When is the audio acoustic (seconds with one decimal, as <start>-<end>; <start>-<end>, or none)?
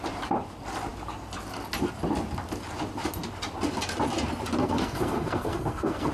0.0-4.6